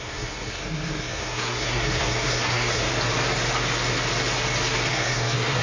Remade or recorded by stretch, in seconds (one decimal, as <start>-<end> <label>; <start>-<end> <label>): 0.0-2.9 remade; 2.9-4.9 recorded; 4.9-5.6 remade